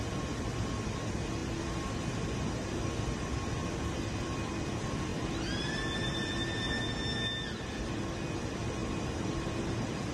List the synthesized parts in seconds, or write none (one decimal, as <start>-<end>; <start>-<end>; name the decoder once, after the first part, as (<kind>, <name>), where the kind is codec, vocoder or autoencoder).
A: none